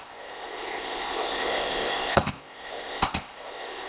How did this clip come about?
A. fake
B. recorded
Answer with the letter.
A